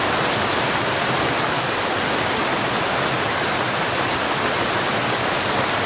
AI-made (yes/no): no